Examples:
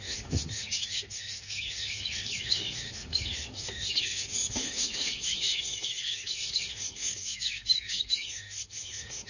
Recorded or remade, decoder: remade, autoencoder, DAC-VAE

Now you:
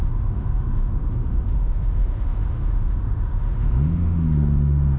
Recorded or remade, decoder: remade, autoencoder, DAC-VAE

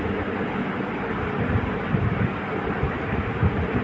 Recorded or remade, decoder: recorded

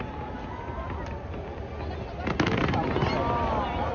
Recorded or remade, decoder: recorded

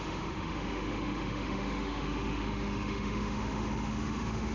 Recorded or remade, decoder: remade, autoencoder, DAC-VAE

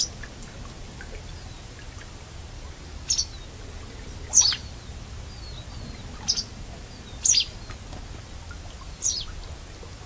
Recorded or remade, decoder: recorded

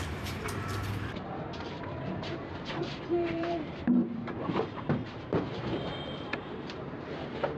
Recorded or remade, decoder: remade, vocoder, BigVGAN v2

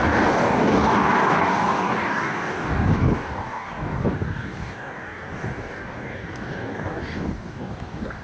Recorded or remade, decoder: remade, codec, DAC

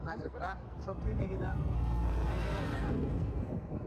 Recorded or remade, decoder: remade, codec, SNAC